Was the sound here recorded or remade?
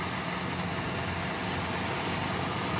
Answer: recorded